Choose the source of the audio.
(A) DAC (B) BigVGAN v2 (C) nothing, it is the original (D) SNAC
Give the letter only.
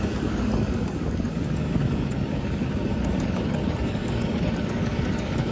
A